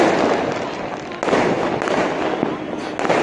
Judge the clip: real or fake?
real